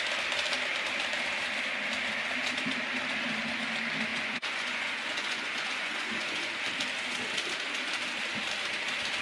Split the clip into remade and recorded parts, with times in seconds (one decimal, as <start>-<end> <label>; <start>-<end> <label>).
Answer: 0.0-4.1 recorded; 4.1-6.5 remade; 6.5-9.2 recorded